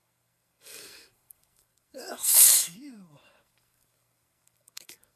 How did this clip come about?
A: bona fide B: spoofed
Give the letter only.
B